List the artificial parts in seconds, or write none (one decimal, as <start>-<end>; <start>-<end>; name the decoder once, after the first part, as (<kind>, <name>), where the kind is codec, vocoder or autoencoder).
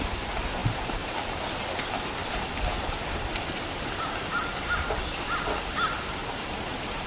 2.2-5.0 (vocoder, BigVGAN v2); 6.2-7.1